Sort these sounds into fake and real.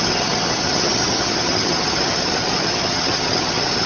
fake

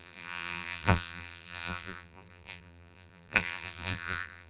fake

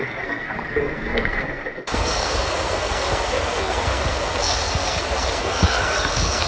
fake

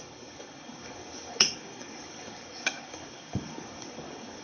fake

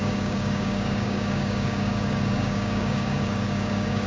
fake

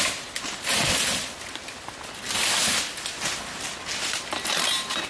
real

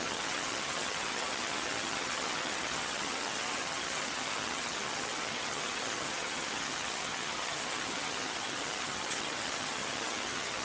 fake